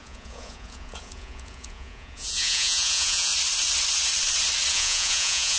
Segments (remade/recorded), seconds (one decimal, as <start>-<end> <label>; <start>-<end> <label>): 0.0-3.3 remade; 3.3-4.7 recorded; 4.7-5.6 remade